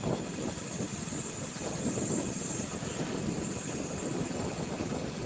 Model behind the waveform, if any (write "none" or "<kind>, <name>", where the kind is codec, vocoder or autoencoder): none